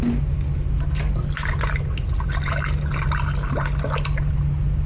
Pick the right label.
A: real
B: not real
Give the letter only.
A